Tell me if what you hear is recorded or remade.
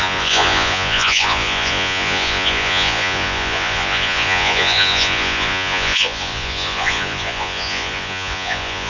remade